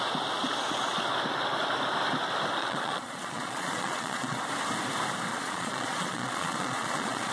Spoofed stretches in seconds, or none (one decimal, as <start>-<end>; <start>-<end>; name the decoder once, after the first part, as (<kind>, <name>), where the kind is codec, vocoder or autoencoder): 2.6-4.4 (vocoder, Vocos); 5.3-7.3

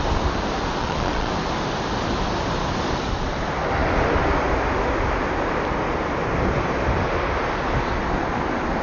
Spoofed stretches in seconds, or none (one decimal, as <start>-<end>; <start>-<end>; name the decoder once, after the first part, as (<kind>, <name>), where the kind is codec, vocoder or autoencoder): 0.8-1.3 (vocoder, Vocos)